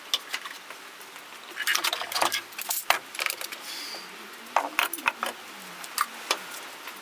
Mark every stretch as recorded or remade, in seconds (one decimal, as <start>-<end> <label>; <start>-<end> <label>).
0.0-1.7 recorded; 1.7-5.9 remade; 5.9-7.0 recorded